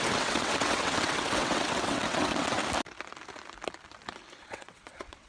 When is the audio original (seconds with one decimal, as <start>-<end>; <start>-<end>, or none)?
2.6-4.4